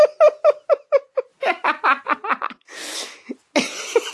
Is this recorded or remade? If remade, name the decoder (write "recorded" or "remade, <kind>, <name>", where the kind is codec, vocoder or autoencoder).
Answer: recorded